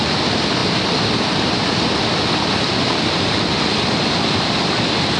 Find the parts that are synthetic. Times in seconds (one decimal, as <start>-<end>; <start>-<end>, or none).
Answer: none